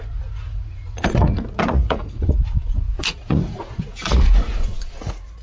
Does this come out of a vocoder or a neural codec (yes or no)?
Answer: yes